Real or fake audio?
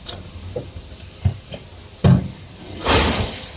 real